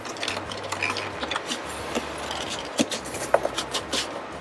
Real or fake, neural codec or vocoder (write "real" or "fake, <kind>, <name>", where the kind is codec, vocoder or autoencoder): real